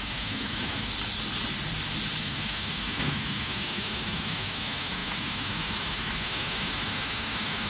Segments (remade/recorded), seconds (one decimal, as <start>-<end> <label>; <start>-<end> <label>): 0.0-0.9 remade; 0.9-2.2 recorded; 2.2-7.7 remade